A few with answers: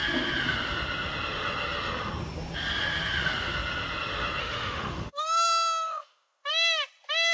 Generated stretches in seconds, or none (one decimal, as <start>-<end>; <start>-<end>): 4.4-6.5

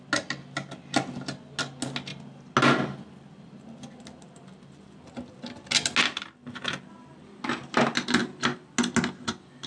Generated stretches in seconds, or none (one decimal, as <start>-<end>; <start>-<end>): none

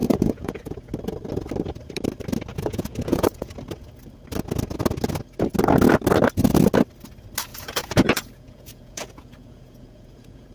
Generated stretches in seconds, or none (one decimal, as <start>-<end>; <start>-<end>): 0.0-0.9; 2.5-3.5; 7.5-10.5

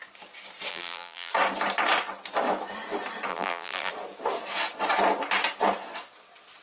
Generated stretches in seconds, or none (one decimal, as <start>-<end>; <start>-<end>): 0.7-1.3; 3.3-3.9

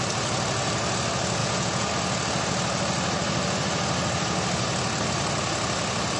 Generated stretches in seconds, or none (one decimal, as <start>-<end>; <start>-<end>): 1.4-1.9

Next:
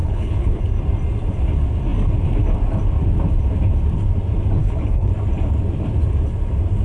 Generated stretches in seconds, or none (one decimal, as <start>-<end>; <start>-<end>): 0.0-0.6; 4.6-5.1

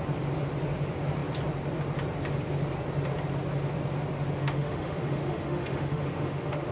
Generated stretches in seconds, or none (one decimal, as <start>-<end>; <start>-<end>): 4.4-6.7